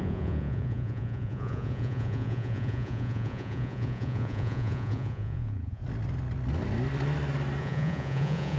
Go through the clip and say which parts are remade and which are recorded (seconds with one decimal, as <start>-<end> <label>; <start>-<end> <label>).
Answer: 0.0-5.8 remade; 5.8-7.6 recorded; 7.6-8.6 remade